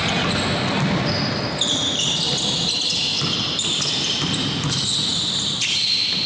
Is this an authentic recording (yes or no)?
yes